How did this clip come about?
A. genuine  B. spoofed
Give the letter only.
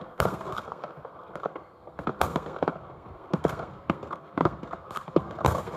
B